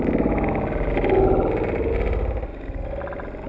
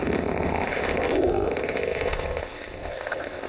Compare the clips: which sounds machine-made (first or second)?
second